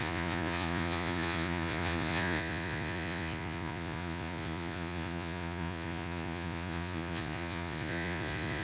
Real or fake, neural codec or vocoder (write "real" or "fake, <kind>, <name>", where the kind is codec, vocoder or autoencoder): fake, vocoder, Vocos